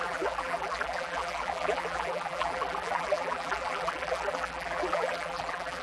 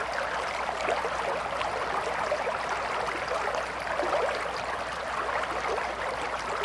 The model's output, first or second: first